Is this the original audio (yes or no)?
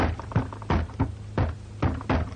yes